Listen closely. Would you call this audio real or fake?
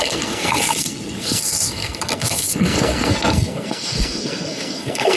fake